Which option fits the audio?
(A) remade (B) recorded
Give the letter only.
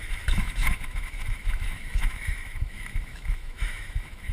A